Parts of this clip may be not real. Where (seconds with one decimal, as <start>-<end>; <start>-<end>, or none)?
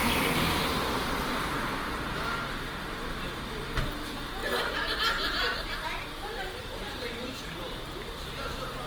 0.0-1.5; 4.4-5.7; 6.6-8.1